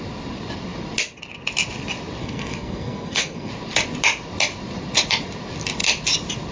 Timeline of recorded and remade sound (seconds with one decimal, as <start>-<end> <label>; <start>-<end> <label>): 0.0-2.2 recorded; 2.2-3.5 remade; 3.5-6.5 recorded